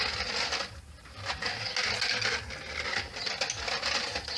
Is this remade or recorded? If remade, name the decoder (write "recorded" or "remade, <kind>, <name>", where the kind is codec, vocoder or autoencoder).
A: recorded